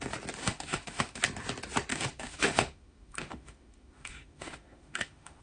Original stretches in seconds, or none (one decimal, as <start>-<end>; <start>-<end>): 0.0-0.4; 1.2-1.9